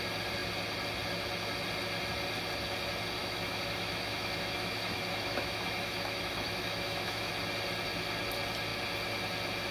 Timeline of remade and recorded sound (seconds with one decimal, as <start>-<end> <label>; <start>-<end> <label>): 0.0-3.2 recorded; 3.2-7.3 remade; 7.3-9.7 recorded